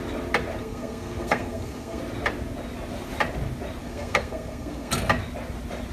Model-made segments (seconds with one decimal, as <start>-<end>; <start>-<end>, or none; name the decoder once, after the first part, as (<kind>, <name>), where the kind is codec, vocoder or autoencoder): 0.6-2.0 (codec, SNAC); 3.8-4.9